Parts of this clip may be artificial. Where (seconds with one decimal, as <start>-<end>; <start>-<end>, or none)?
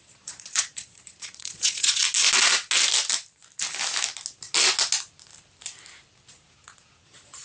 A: 0.0-2.0; 6.3-7.4